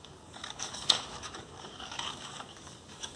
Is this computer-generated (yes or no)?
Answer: yes